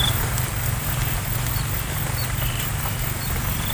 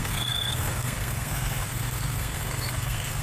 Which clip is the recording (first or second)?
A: first